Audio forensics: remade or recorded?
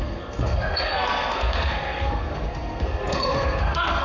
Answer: remade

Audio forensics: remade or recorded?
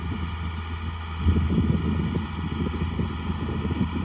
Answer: recorded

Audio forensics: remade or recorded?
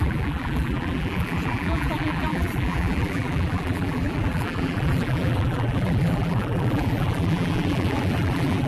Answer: remade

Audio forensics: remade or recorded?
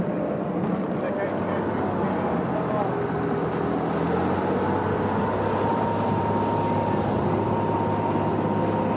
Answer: recorded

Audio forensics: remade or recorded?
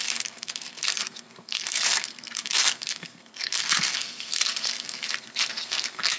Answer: remade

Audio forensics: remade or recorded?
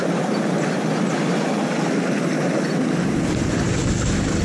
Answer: recorded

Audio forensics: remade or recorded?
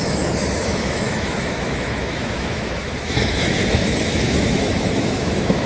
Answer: remade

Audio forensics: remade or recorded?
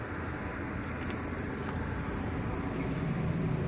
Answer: recorded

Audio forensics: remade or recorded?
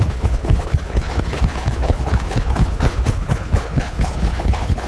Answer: remade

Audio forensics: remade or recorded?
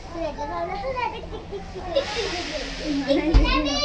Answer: recorded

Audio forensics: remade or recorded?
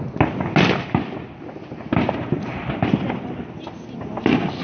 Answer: recorded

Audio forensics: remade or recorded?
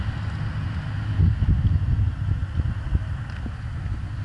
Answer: recorded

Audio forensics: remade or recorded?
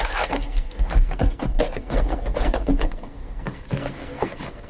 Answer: remade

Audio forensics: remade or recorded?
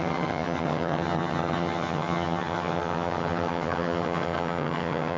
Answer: remade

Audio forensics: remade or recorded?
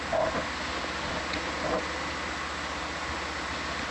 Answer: recorded